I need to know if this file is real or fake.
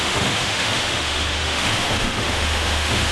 fake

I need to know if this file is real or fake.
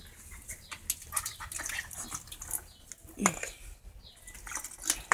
real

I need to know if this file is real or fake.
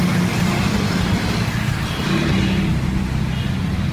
real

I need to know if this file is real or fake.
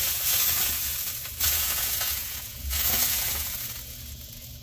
fake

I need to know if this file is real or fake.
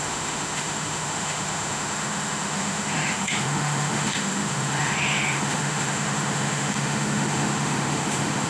fake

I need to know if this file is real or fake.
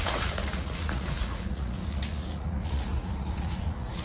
fake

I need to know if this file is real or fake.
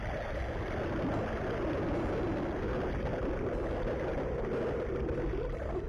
real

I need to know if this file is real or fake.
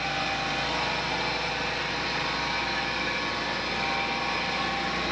real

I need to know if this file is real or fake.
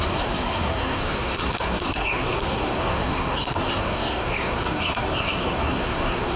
fake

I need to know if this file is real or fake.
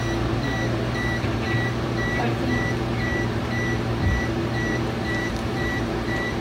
fake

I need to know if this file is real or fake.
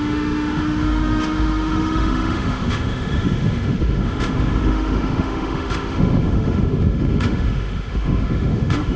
fake